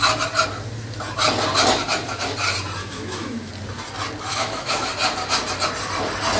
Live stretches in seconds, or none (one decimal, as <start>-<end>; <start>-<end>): 0.0-2.8; 3.5-4.3; 4.9-6.4

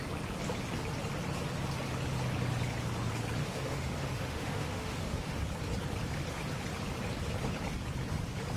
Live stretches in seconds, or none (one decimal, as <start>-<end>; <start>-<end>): 0.0-3.4; 5.4-8.6

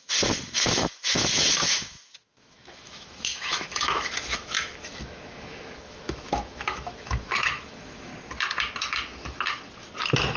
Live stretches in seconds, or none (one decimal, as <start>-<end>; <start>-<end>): 8.1-10.4